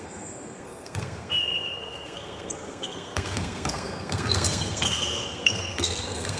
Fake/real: fake